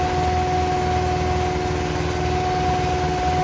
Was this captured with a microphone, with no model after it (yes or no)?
yes